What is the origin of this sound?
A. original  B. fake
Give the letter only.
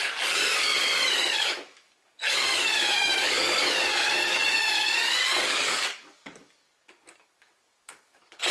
B